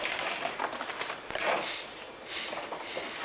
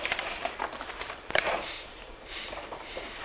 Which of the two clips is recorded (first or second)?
first